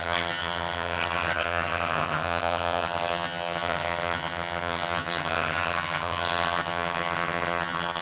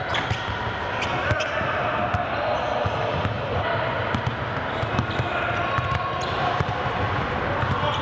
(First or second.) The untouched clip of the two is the second